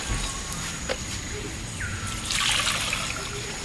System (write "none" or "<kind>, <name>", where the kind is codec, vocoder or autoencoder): none